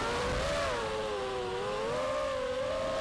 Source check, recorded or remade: recorded